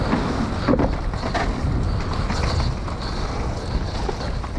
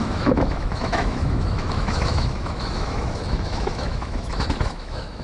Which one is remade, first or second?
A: second